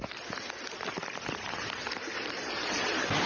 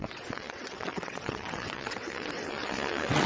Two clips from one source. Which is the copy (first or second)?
second